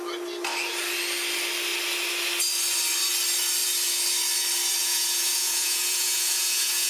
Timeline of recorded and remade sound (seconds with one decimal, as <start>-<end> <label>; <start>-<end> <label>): 0.0-4.8 recorded; 4.8-6.9 remade

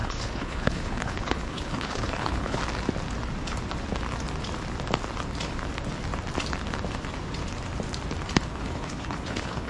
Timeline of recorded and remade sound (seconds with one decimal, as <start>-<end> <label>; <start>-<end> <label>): 0.0-2.6 remade; 2.6-8.5 recorded; 8.5-9.7 remade

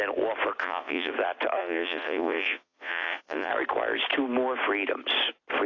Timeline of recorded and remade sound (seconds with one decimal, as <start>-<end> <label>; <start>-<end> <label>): 0.0-0.6 recorded; 0.6-1.1 remade; 1.1-1.6 recorded; 1.6-3.5 remade; 3.5-5.7 recorded